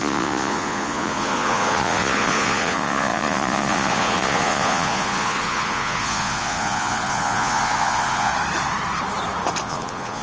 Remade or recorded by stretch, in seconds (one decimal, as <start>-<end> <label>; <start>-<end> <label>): 0.0-8.3 remade; 8.3-9.6 recorded; 9.6-10.2 remade